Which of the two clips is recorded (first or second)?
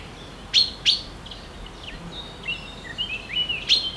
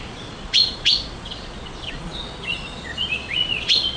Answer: first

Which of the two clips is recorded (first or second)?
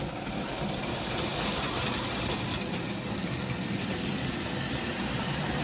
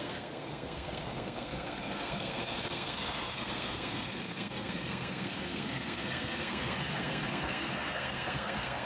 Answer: first